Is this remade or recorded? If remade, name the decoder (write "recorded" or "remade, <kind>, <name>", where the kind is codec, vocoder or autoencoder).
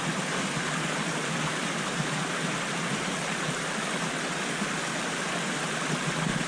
recorded